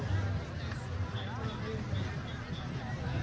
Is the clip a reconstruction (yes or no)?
no